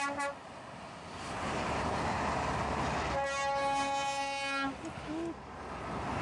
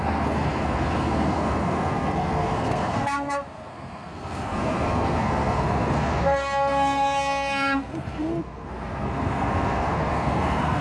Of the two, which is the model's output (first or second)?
second